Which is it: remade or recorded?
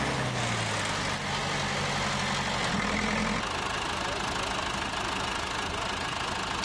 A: recorded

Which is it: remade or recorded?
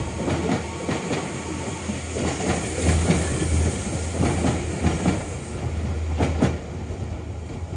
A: recorded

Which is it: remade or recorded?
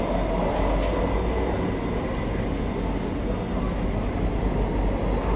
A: recorded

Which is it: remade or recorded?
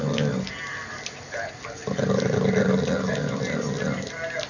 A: recorded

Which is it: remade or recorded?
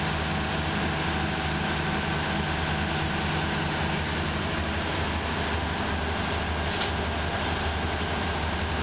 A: recorded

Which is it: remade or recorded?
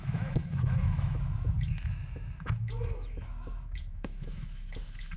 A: remade